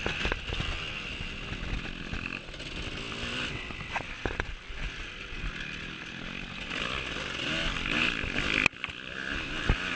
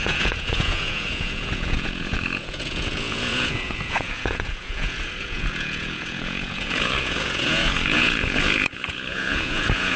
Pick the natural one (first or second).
first